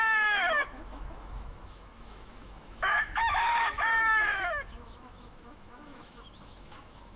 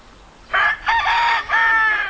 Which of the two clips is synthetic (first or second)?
first